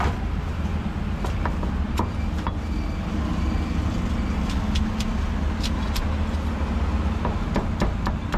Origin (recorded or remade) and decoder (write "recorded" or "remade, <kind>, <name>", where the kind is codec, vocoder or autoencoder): recorded